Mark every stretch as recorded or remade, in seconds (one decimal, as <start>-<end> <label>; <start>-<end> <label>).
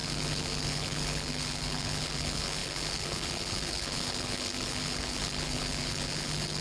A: 0.0-6.6 remade